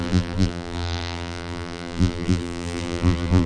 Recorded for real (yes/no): no